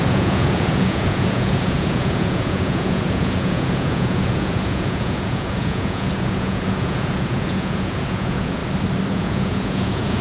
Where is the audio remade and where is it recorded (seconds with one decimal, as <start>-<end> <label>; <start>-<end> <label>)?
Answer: 0.0-8.6 remade; 8.6-9.1 recorded; 9.1-10.2 remade